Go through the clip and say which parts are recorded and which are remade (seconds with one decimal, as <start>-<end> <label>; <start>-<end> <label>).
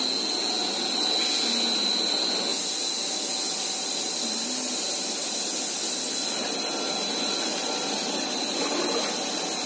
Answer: 0.0-9.7 recorded